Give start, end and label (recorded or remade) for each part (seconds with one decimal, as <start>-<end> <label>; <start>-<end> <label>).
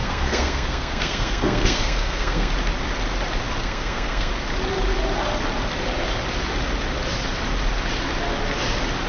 0.0-2.5 remade; 2.5-3.6 recorded; 3.6-4.3 remade; 4.3-9.1 recorded